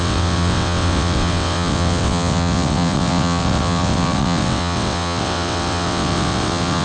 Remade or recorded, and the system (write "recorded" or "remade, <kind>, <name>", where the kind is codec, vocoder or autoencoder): remade, vocoder, WaveNeXt